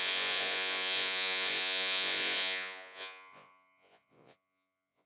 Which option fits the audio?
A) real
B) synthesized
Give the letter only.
B